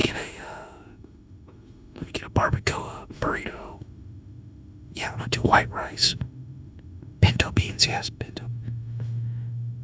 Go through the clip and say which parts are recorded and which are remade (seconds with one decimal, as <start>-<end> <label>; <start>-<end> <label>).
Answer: 0.0-9.8 remade